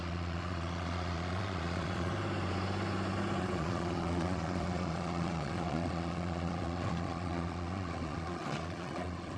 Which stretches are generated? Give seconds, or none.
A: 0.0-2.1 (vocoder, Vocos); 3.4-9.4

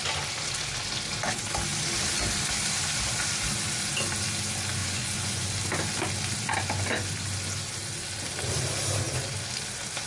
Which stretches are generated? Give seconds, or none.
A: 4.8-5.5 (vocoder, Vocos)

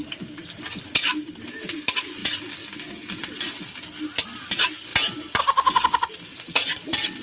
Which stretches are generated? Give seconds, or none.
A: 6.3-7.2 (vocoder, Vocos)